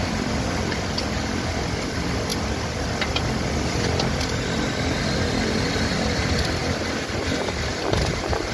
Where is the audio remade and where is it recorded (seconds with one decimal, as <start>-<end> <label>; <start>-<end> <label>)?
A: 0.0-2.3 remade; 2.3-5.7 recorded; 5.7-6.6 remade; 6.6-8.0 recorded; 8.0-8.5 remade